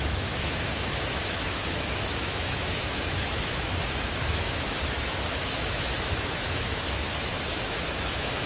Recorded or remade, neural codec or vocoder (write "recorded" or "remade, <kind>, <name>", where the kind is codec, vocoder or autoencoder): remade, autoencoder, DAC-VAE